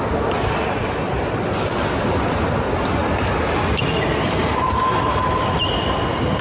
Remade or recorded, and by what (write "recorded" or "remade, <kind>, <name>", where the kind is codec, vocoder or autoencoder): recorded